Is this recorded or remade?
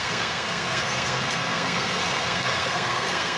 remade